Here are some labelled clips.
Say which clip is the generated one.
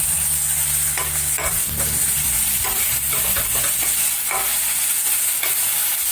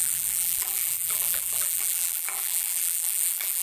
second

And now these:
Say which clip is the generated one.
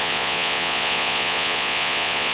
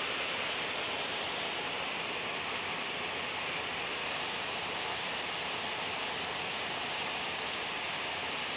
first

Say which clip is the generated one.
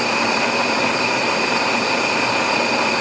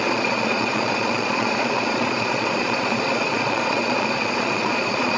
second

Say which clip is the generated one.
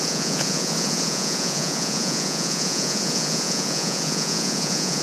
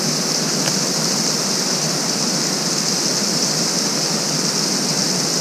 first